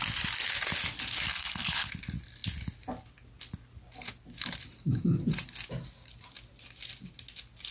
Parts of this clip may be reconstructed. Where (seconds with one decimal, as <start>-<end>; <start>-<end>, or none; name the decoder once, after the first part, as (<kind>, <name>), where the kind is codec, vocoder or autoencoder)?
1.3-1.9 (codec, HILCodec)